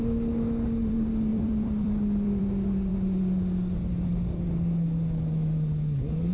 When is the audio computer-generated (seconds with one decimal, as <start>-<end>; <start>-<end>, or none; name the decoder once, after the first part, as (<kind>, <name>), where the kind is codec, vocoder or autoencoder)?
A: 1.3-2.4 (vocoder, BigVGAN v2)